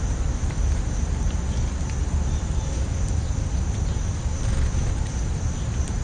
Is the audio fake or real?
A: real